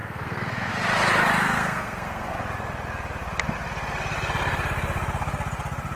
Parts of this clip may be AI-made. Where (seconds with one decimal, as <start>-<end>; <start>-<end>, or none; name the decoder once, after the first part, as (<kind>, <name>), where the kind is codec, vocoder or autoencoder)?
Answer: 0.0-0.7 (codec, SNAC); 1.4-2.4